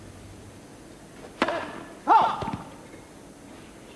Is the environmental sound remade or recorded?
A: recorded